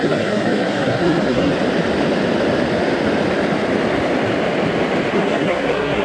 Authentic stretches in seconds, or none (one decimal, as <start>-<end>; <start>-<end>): 1.5-5.1